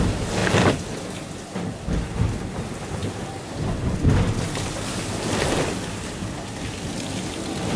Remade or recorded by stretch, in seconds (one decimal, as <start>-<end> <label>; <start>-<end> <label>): 0.0-7.8 recorded